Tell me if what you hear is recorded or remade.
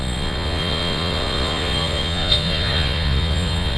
remade